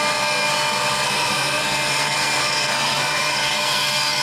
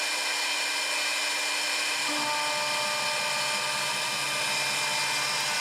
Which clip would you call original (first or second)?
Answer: second